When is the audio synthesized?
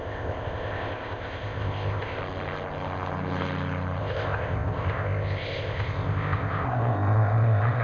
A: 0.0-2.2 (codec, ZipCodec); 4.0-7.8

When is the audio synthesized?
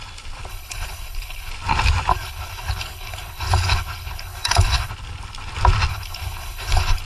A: 0.5-1.5 (codec, HILCodec); 2.1-4.9; 5.9-7.0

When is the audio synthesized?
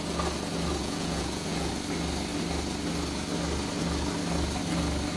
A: 0.8-1.7 (vocoder, Vocos)